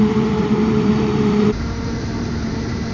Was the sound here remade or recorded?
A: remade